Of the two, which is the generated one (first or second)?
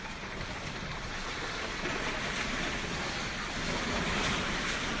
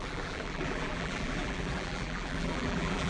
second